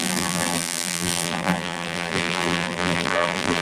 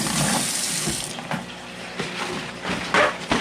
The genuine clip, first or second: second